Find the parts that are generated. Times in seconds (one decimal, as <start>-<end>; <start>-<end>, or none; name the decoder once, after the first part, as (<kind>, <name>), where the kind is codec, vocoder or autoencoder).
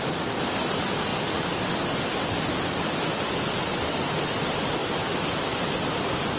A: none